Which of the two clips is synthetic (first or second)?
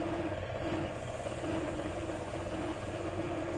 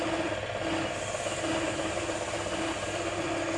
first